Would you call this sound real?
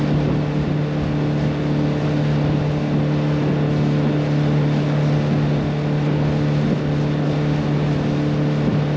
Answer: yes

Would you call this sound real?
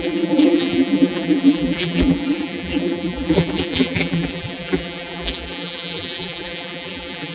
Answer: no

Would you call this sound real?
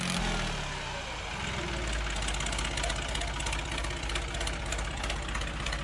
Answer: yes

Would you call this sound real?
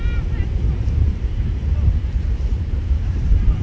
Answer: no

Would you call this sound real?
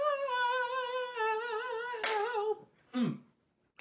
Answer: yes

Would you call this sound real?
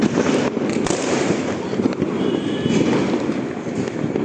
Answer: yes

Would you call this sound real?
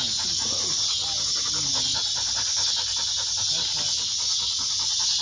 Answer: yes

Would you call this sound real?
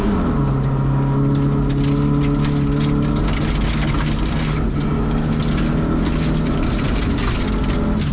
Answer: yes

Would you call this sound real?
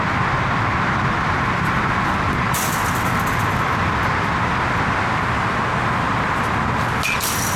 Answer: yes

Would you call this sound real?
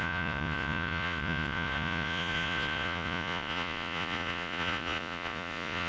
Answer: no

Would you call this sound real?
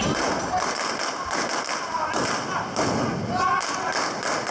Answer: yes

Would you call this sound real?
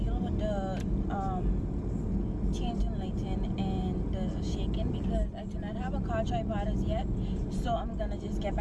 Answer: yes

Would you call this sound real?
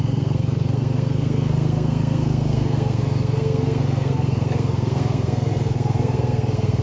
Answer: no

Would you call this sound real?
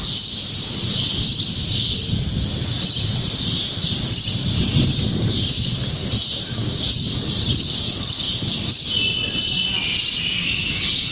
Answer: yes